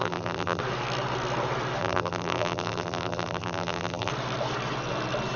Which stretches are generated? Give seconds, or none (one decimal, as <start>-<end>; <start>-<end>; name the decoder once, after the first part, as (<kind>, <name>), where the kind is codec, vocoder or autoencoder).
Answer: 0.0-0.6 (vocoder, BigVGAN v2); 1.8-4.1